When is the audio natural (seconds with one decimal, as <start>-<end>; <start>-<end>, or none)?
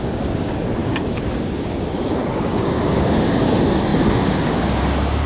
none